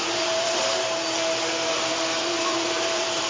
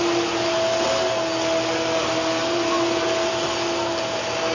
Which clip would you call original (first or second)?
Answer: second